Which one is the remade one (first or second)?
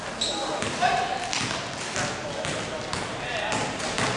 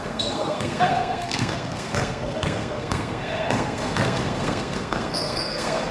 second